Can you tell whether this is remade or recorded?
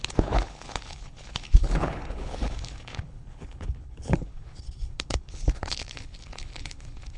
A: remade